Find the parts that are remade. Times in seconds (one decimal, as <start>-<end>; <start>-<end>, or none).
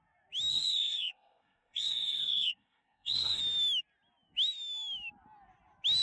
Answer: 0.5-3.4